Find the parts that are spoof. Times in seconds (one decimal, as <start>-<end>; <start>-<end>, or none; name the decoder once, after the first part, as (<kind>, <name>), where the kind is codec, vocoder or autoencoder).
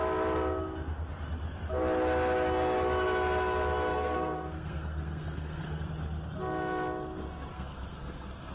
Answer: 3.9-5.9 (codec, SNAC); 7.5-8.5